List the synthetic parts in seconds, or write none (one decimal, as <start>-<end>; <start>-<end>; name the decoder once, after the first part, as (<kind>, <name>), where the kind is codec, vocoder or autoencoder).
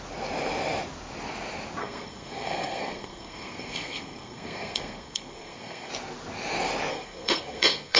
1.8-5.9 (codec, SNAC); 6.9-8.0